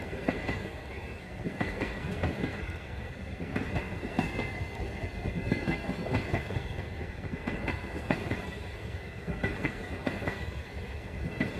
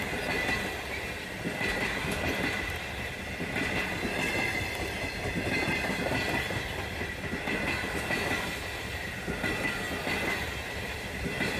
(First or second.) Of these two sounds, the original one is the second